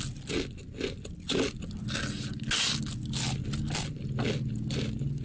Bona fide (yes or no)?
yes